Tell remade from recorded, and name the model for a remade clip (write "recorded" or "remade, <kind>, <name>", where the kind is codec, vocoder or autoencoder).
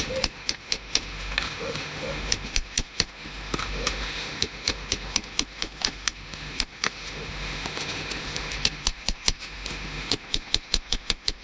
remade, autoencoder, DAC-VAE